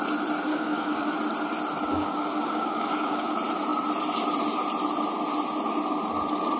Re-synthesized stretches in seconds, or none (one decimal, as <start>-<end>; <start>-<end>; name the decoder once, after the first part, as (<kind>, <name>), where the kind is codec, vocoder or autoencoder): 0.5-1.1 (codec, DAC); 1.9-3.3